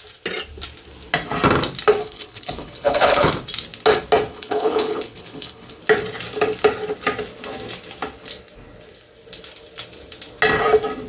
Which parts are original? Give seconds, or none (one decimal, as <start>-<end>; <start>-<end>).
0.0-2.0; 3.3-4.3; 5.8-11.1

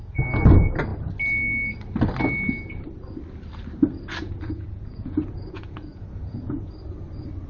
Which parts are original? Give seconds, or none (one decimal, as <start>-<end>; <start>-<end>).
0.0-4.2; 6.7-7.5

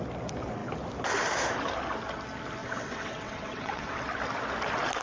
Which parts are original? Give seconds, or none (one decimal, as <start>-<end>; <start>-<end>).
0.0-2.6; 4.0-5.0

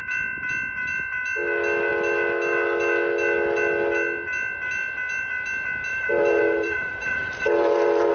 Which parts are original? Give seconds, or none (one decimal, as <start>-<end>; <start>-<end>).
0.0-5.9

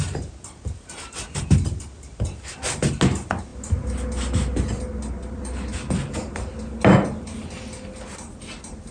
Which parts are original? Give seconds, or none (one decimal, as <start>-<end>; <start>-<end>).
0.0-8.9

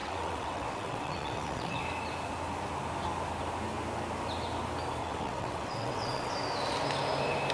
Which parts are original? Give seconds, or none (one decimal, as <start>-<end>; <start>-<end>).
1.8-5.0; 6.3-7.5

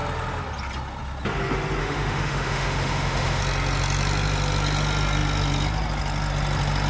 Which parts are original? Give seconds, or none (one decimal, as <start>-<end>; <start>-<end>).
0.0-1.8; 3.4-6.9

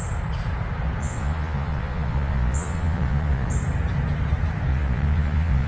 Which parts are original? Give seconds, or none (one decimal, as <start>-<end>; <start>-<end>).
0.0-1.0; 3.5-4.7